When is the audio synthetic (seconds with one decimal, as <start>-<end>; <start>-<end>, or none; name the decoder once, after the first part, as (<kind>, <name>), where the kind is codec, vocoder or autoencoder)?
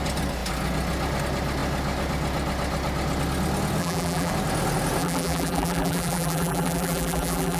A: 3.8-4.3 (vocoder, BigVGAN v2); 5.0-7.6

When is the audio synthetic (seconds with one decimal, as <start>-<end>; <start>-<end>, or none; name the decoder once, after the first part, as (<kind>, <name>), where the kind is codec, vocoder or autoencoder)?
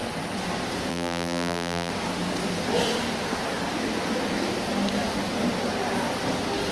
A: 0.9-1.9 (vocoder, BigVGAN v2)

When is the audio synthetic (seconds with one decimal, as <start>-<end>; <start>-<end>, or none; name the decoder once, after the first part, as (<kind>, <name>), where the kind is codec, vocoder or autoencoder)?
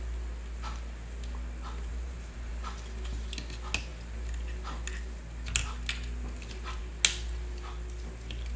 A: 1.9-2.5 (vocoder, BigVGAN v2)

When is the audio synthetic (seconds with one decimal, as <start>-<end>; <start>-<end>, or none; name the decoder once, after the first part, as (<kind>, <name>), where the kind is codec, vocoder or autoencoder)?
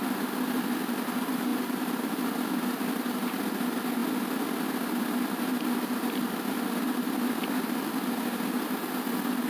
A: 1.5-2.2 (vocoder, BigVGAN v2)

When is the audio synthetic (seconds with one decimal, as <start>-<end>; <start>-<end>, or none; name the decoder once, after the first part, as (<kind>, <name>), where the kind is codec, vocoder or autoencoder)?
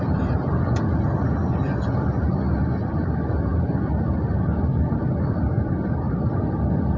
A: 0.0-1.4 (vocoder, BigVGAN v2); 2.8-3.5; 4.6-7.0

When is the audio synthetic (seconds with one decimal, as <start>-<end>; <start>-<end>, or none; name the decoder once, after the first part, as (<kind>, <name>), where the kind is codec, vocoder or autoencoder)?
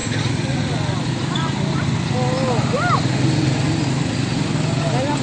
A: none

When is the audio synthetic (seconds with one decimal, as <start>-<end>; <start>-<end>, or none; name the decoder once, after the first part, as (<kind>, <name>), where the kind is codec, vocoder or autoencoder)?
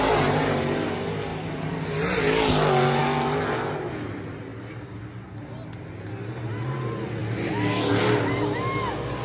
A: none